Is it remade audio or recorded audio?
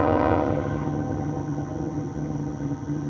remade